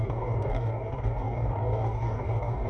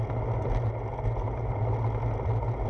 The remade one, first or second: first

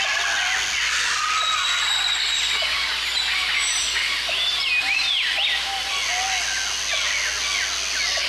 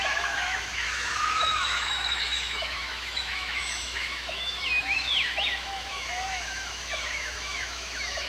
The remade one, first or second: second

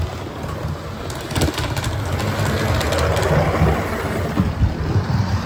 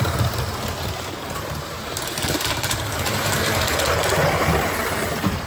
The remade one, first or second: second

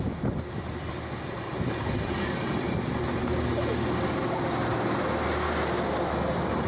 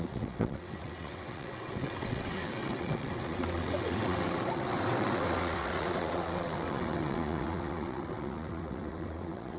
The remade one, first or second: second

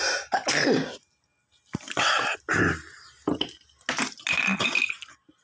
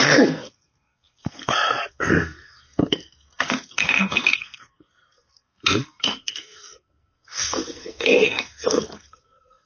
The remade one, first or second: second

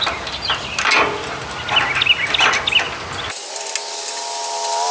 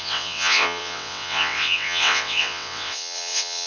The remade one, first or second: second